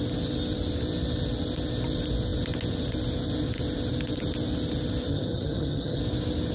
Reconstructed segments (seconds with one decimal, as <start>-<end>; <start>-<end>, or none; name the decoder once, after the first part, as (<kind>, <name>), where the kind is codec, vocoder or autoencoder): 5.1-6.0 (vocoder, HiFi-GAN)